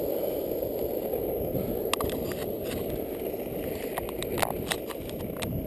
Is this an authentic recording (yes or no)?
yes